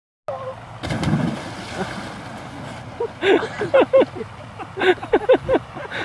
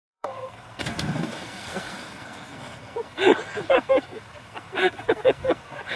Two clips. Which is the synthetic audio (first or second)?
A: second